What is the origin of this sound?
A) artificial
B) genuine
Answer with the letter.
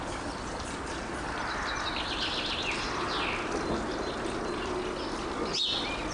B